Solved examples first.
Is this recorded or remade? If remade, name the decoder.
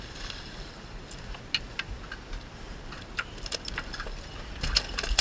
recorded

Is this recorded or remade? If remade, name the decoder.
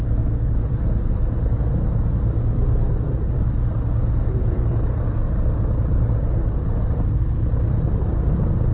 recorded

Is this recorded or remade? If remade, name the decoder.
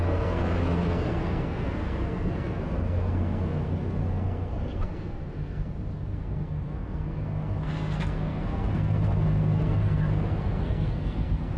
remade, codec, SNAC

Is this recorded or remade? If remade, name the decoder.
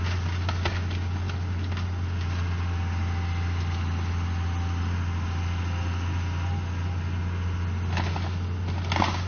recorded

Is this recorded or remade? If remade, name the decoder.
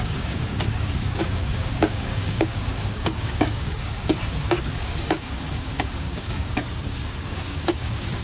remade, codec, DAC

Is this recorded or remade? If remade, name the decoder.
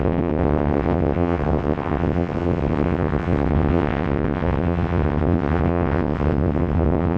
remade, vocoder, WaveNeXt